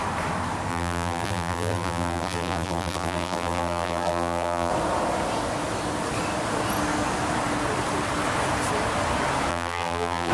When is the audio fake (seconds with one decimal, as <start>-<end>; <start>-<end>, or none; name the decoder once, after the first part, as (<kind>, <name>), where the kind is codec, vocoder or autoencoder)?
0.7-4.7 (vocoder, BigVGAN v2); 9.5-10.3